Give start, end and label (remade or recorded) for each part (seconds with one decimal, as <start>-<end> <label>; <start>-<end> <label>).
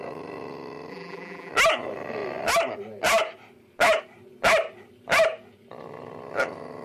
0.0-0.9 recorded; 0.9-1.5 remade; 1.5-6.8 recorded